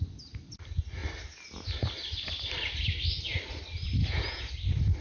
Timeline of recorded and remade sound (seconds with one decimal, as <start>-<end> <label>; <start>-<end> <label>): 0.0-4.0 recorded; 4.0-4.5 remade; 4.5-5.0 recorded